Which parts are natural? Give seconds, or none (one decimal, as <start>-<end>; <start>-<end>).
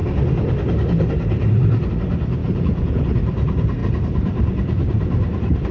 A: 0.0-2.4; 3.0-5.7